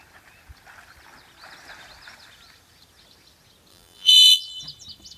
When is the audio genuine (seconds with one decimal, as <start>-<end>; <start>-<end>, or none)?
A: 0.0-3.7; 4.6-5.2